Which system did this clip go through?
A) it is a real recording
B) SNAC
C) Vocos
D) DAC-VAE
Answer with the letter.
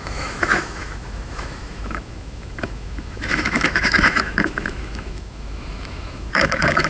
D